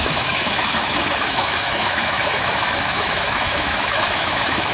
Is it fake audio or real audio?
fake